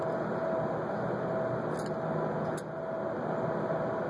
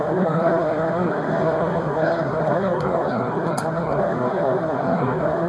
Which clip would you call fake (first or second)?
second